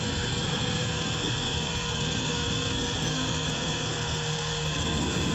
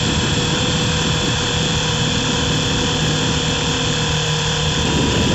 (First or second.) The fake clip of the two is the first